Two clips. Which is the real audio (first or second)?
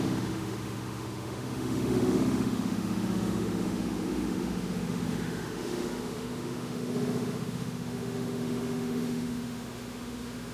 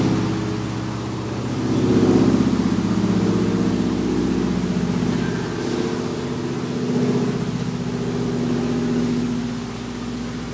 second